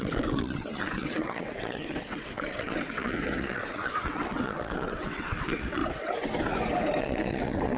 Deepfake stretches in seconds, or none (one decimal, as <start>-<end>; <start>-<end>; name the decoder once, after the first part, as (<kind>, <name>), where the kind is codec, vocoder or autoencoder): 0.0-5.8 (vocoder, WaveNeXt); 7.0-7.8